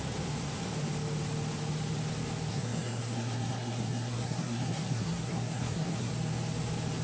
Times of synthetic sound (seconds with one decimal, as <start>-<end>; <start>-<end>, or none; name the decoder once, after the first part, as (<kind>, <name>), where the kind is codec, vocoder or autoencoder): 2.5-6.1 (codec, SNAC)